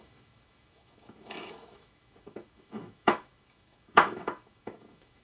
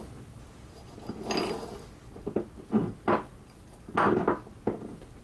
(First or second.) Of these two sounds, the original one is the second